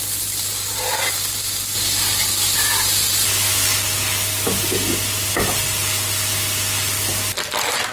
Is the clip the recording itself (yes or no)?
yes